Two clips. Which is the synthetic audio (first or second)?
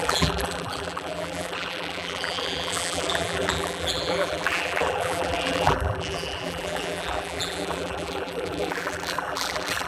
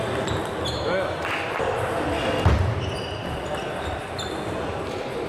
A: first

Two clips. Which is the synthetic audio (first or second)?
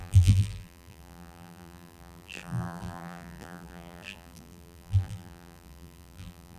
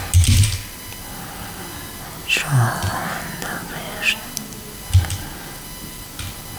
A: first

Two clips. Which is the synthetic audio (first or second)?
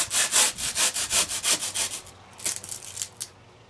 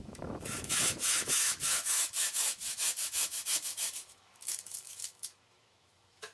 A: second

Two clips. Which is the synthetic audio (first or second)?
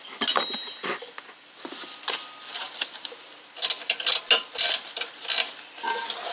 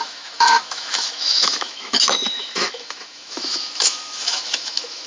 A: second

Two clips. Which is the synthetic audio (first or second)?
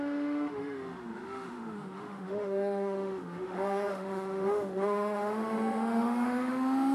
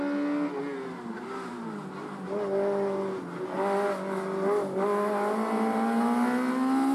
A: first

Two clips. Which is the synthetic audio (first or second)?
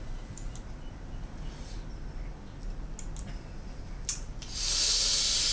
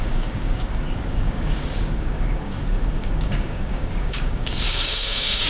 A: second